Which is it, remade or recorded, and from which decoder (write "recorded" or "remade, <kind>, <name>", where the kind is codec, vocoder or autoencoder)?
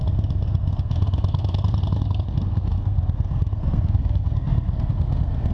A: remade, codec, SNAC